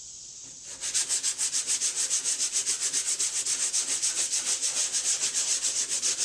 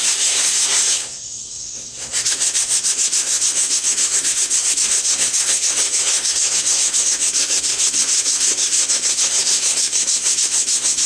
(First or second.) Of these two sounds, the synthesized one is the second